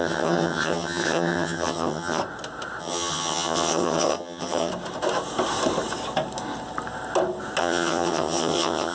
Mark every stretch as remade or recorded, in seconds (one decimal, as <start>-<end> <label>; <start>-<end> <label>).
0.0-2.2 remade; 2.2-2.8 recorded; 2.8-4.7 remade; 4.7-7.6 recorded; 7.6-8.9 remade